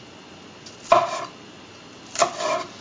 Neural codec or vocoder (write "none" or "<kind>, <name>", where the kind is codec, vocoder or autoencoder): none